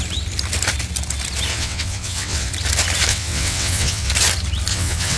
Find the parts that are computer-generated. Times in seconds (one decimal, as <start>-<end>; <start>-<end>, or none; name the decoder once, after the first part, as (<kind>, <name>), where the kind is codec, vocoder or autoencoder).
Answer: 1.5-2.5 (vocoder, WaveNeXt); 3.1-4.1; 4.7-5.2

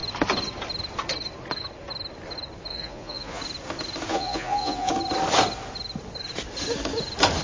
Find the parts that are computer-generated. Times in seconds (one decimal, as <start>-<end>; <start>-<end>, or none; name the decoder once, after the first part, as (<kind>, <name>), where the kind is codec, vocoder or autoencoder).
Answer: 2.7-3.4 (vocoder, Vocos); 4.1-4.9